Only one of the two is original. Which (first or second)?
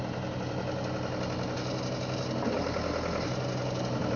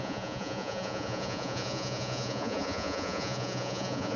first